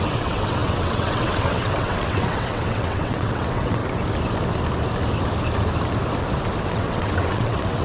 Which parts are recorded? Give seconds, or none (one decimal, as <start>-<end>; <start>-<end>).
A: 3.8-6.7